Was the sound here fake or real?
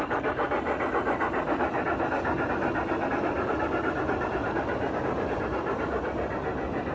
real